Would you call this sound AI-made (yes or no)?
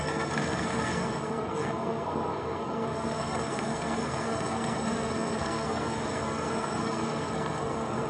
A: yes